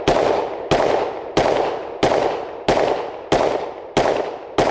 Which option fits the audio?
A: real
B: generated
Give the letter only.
A